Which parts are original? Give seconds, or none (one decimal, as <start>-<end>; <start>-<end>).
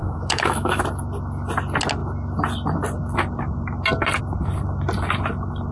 0.8-5.7